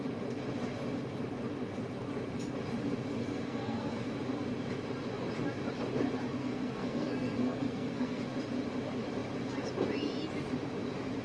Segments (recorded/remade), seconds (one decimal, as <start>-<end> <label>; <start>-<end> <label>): 0.0-3.2 recorded; 3.2-4.1 remade; 4.1-6.4 recorded; 6.4-8.2 remade; 8.2-11.2 recorded